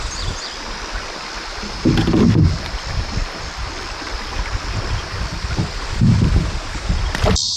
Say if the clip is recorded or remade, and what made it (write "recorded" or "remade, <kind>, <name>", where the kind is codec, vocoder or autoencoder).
remade, vocoder, BigVGAN v2